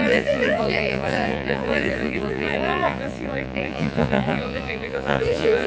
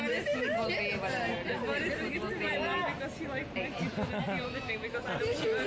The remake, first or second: first